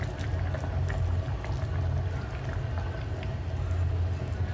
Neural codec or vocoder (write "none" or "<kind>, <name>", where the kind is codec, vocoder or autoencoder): none